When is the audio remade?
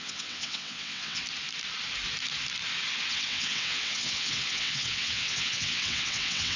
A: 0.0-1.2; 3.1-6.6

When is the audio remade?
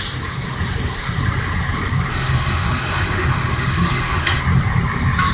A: 2.1-4.4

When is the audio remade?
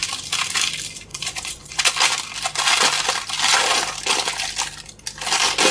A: 1.1-1.9